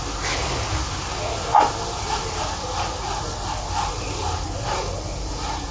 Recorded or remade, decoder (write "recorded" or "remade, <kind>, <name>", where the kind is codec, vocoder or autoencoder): recorded